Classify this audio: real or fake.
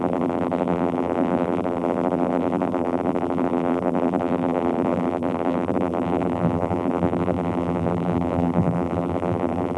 fake